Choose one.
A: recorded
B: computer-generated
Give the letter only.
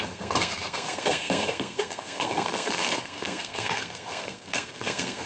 B